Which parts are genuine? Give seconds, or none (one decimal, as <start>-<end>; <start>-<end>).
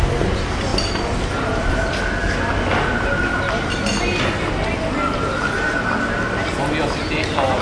0.0-7.6